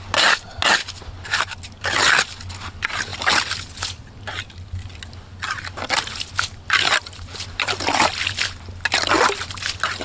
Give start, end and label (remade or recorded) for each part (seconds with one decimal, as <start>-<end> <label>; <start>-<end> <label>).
0.0-10.0 recorded